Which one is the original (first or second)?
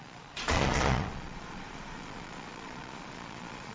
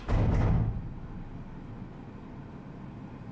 second